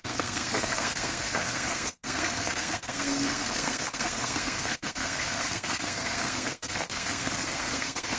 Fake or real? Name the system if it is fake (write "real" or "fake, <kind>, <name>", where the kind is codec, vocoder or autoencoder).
fake, codec, SNAC